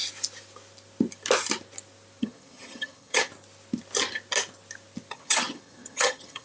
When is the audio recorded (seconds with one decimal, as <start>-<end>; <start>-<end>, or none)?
0.0-2.2; 3.3-5.1